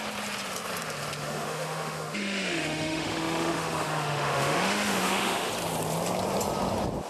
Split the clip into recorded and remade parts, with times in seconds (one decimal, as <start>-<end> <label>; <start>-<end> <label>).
0.0-1.2 recorded; 1.2-5.5 remade; 5.5-7.1 recorded